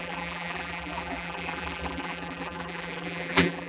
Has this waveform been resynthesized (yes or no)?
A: yes